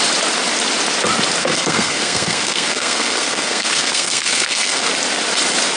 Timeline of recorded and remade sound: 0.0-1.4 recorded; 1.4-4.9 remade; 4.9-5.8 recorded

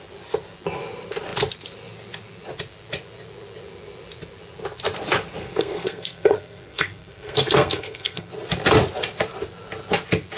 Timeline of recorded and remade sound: 0.0-5.4 recorded; 5.4-8.3 remade; 8.3-10.4 recorded